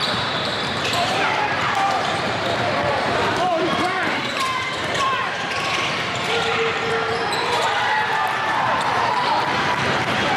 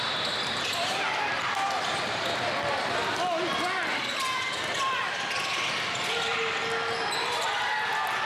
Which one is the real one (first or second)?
second